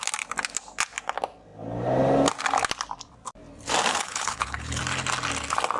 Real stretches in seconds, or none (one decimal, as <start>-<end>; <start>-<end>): 0.0-3.9; 4.8-5.8